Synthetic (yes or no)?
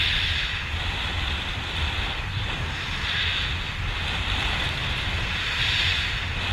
no